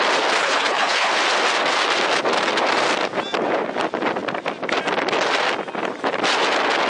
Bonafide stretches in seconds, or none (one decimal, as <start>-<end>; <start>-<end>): 0.0-0.4; 1.1-6.9